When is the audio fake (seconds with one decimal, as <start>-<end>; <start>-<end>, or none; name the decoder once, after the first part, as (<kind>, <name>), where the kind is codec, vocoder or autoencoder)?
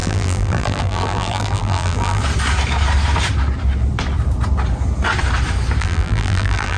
0.0-2.2 (vocoder, BigVGAN v2); 5.8-6.8